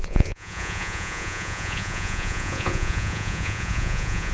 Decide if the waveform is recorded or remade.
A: remade